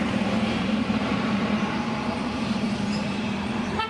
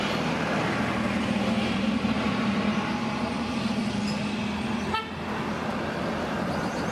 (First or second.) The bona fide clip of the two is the second